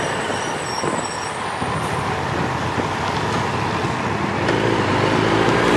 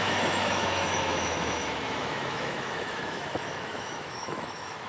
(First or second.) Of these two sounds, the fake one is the second